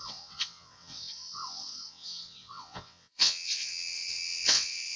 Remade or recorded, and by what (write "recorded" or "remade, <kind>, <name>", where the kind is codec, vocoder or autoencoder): remade, vocoder, WaveNeXt